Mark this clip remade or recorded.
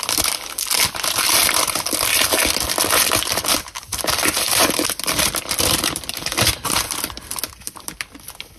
remade